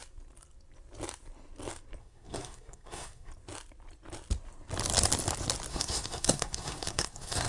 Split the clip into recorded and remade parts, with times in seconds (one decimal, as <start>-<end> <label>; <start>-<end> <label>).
0.0-2.0 recorded; 2.0-3.3 remade; 3.3-5.7 recorded; 5.7-7.5 remade